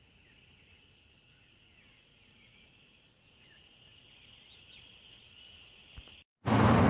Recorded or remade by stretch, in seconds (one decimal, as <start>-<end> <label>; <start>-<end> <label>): 0.0-5.8 remade; 5.8-6.9 recorded